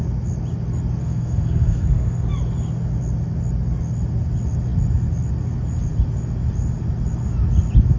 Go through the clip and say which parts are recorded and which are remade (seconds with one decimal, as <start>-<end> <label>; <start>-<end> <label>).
0.0-1.0 recorded; 1.0-2.3 remade; 2.3-8.0 recorded